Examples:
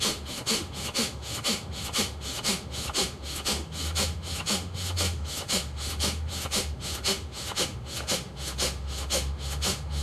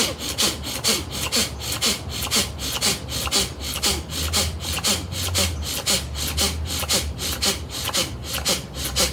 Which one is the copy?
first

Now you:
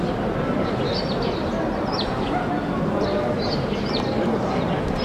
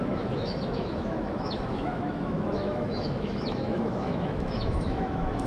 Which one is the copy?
second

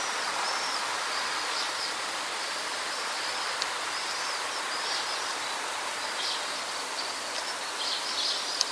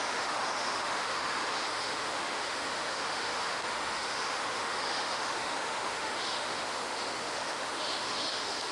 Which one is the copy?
second